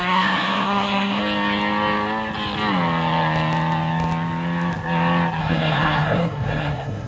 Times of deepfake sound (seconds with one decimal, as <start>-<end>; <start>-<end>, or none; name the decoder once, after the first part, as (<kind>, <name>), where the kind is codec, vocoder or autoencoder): 0.0-1.2 (codec, SNAC); 5.4-7.1